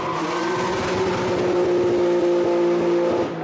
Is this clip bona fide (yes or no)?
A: yes